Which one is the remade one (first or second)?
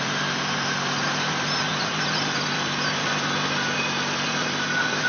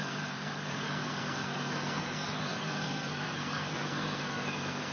second